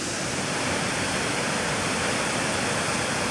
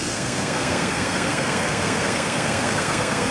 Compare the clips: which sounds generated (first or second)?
second